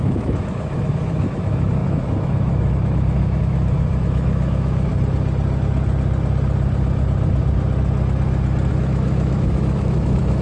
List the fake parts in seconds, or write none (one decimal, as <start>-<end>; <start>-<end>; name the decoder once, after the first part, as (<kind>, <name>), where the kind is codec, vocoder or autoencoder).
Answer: 0.0-4.9 (autoencoder, DAC-VAE); 8.7-10.4